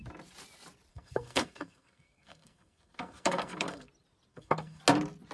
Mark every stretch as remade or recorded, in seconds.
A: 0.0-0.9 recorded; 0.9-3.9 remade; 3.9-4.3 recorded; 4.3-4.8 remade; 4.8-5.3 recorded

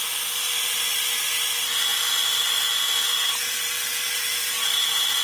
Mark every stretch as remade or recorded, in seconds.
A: 0.0-5.2 recorded

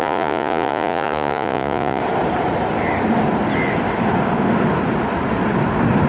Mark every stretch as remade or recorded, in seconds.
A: 0.0-2.0 remade; 2.0-6.1 recorded

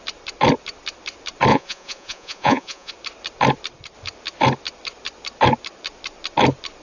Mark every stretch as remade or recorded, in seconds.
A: 0.0-1.5 recorded; 1.5-2.9 remade; 2.9-6.8 recorded

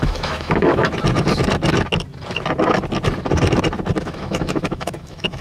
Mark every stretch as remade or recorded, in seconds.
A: 0.0-0.8 remade; 0.8-4.0 recorded; 4.0-5.4 remade

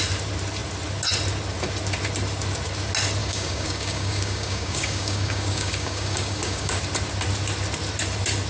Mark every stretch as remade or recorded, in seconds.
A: 0.0-3.2 recorded; 3.2-6.7 remade; 6.7-8.5 recorded

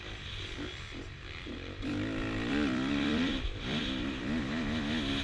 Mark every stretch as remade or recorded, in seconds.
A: 0.0-0.7 recorded; 0.7-3.8 remade; 3.8-5.2 recorded